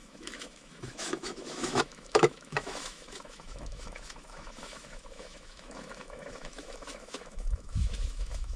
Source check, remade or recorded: remade